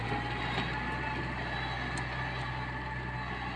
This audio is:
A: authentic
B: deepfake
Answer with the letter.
A